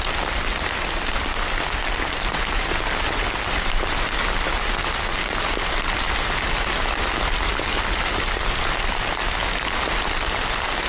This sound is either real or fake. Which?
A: real